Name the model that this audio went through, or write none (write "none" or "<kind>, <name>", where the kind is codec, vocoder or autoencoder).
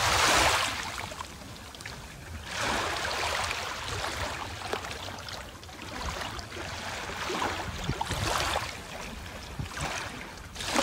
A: none